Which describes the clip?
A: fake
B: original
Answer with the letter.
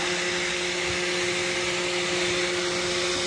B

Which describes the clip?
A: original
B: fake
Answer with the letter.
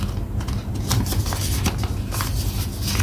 A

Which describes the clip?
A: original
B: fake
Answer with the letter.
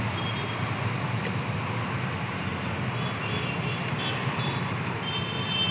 A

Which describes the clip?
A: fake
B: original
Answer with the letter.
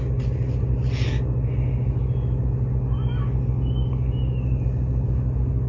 B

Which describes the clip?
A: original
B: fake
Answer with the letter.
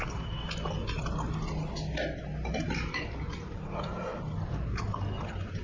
A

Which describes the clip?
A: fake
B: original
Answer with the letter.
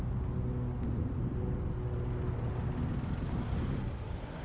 B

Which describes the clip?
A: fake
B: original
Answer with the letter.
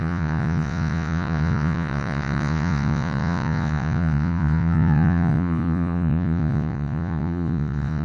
A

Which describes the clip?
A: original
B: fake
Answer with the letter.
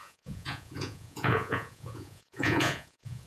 B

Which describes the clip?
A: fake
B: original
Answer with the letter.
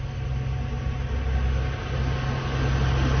B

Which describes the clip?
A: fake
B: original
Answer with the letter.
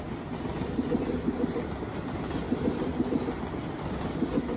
B